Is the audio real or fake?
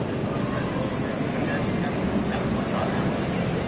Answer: fake